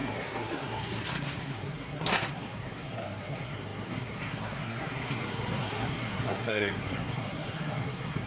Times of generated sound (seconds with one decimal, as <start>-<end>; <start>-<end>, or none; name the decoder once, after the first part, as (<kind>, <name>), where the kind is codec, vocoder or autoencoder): 0.0-8.3 (codec, SNAC)